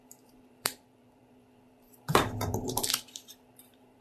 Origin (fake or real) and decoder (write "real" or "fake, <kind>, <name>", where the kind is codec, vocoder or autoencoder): fake, vocoder, BigVGAN v2